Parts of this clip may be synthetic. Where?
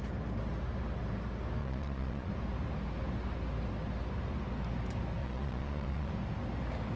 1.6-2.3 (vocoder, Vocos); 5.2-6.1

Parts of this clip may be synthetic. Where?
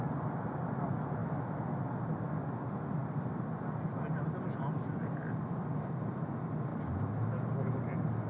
1.2-1.7 (autoencoder, DAC-VAE)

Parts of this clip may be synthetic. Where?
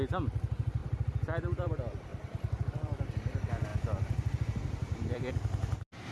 0.8-1.7 (vocoder, BigVGAN v2); 2.1-3.1; 3.7-5.3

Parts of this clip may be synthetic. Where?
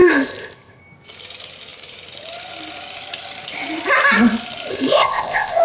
0.0-0.8 (codec, ZipCodec); 4.7-5.6